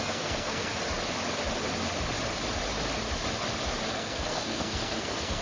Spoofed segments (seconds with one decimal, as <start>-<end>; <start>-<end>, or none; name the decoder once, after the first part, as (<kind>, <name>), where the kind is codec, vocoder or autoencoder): 0.0-0.7 (codec, SNAC); 3.9-5.4